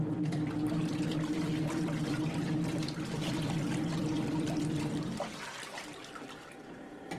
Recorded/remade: remade